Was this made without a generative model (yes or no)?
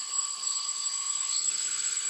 no